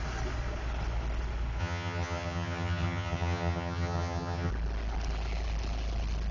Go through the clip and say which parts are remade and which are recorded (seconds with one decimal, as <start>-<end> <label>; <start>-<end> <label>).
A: 0.0-1.6 recorded; 1.6-4.5 remade; 4.5-6.3 recorded